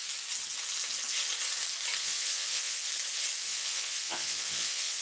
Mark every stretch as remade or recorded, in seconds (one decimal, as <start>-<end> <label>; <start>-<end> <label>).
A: 0.0-2.0 recorded; 2.0-2.9 remade; 2.9-3.5 recorded; 3.5-5.0 remade